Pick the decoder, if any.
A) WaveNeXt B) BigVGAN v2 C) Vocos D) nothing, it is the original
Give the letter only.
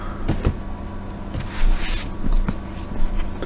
D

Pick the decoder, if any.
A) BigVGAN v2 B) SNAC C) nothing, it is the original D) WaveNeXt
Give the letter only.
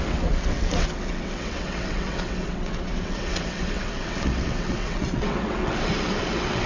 D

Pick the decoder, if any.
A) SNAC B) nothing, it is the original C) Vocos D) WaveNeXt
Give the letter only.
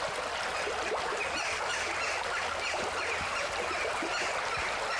B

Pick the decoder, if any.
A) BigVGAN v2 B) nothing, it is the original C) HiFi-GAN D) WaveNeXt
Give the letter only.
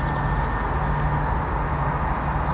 B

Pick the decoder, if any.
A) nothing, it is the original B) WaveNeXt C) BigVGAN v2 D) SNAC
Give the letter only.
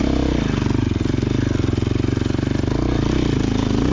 A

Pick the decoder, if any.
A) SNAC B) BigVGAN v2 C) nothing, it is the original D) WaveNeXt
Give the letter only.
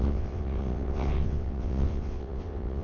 D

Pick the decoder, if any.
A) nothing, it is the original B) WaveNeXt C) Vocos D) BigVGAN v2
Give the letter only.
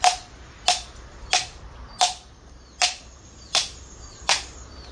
A